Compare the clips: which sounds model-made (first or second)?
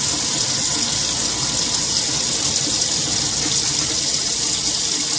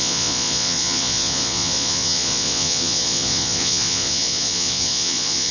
second